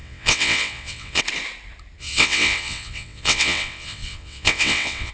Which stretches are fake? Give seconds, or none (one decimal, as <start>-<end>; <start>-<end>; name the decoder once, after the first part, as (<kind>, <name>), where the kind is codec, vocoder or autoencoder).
0.0-1.2 (vocoder, WaveNeXt); 2.0-5.1